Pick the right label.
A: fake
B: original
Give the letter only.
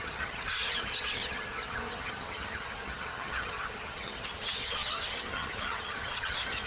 A